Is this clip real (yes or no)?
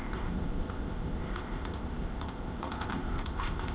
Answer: no